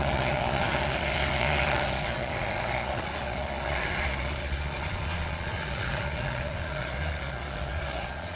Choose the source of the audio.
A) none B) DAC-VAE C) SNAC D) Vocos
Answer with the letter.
D